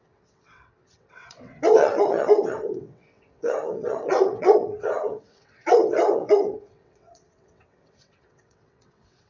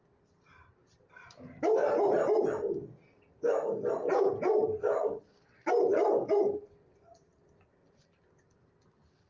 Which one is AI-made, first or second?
first